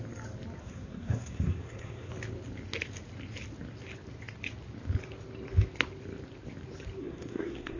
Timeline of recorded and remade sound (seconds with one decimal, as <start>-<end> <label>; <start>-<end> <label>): 0.0-0.6 recorded; 0.6-2.1 remade; 2.1-7.0 recorded; 7.0-7.8 remade